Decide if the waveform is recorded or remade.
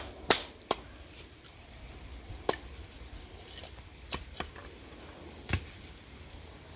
remade